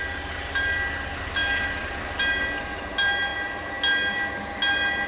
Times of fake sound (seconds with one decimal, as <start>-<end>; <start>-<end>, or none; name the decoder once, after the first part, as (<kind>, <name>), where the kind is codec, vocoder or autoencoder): none